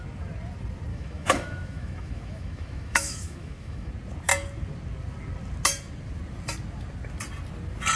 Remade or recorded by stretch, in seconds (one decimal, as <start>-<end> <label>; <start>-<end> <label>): 0.0-0.9 recorded; 0.9-3.9 remade; 3.9-8.0 recorded